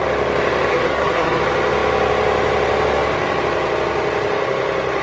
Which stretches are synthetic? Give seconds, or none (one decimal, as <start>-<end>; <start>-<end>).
0.7-1.4

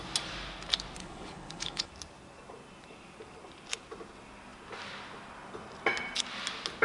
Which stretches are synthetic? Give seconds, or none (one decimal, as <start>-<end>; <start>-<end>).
1.0-1.9

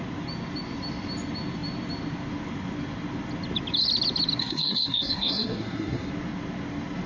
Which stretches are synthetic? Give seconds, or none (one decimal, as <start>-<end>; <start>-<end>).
4.4-6.1

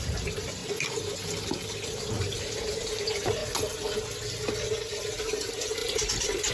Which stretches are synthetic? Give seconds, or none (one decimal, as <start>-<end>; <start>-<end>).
0.0-0.6; 2.2-3.4; 5.2-6.5

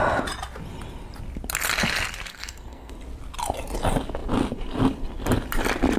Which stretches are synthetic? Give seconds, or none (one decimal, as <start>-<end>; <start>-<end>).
2.3-2.9

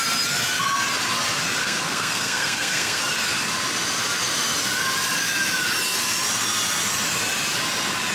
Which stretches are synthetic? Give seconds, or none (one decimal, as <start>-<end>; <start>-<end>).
1.6-3.0

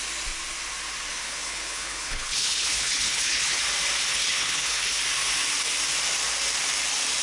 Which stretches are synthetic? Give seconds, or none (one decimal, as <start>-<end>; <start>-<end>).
1.1-3.6; 4.1-5.0